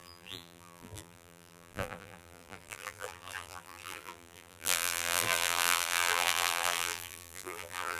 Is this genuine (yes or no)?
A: no